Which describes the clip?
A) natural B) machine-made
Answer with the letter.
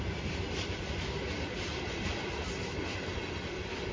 A